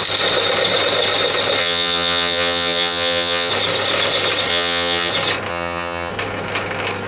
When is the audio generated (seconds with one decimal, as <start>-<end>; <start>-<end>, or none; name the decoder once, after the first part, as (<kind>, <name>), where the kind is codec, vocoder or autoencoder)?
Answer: 1.6-3.5 (vocoder, HiFi-GAN); 4.5-5.1; 5.5-6.1